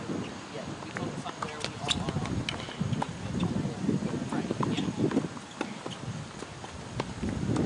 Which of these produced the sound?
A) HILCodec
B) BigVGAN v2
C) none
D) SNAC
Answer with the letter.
C